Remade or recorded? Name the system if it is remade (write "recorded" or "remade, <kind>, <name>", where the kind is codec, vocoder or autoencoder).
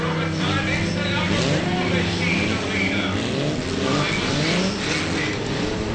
recorded